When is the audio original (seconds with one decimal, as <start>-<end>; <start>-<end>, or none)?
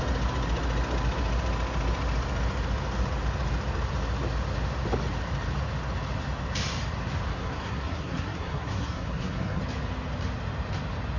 0.0-7.3; 9.6-11.2